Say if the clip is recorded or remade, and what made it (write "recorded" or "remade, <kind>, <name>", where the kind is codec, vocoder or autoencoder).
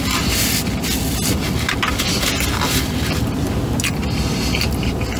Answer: recorded